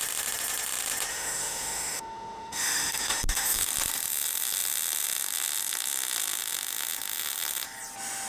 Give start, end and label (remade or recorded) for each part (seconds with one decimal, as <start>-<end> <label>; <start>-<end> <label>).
0.0-1.1 recorded; 1.1-3.7 remade; 3.7-8.3 recorded

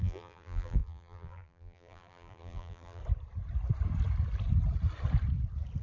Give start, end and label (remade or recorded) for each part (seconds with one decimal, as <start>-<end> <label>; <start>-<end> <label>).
0.0-3.0 remade; 3.0-5.8 recorded

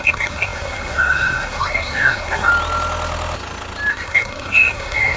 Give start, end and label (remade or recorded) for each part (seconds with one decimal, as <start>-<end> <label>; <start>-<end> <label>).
0.0-2.5 remade; 2.5-3.9 recorded; 3.9-5.2 remade

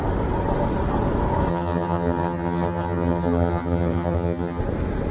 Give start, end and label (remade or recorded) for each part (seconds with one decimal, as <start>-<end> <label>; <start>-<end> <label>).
0.0-1.5 recorded; 1.5-4.6 remade; 4.6-5.1 recorded

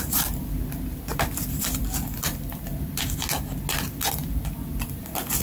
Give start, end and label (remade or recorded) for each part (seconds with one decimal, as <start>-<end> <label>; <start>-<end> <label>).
0.0-1.1 recorded; 1.1-2.3 remade; 2.3-5.4 recorded

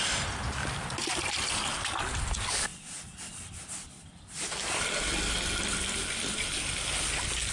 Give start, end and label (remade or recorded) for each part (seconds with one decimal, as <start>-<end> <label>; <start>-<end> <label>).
0.0-7.5 recorded

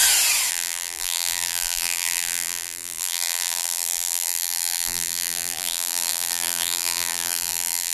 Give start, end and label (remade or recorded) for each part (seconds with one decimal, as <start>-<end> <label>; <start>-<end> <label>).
0.0-0.5 recorded; 0.5-7.9 remade

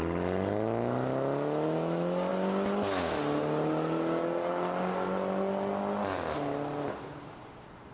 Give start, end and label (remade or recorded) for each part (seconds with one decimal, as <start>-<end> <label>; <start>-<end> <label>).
0.0-7.9 recorded